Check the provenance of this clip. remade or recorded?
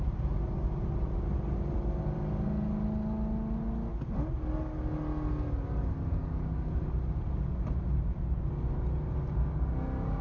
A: recorded